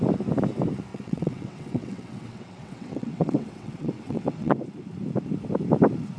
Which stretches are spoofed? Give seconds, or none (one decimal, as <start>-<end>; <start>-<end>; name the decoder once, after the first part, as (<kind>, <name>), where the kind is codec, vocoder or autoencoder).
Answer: 0.9-4.6 (vocoder, WaveNeXt)